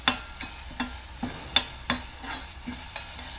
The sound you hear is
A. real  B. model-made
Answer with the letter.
A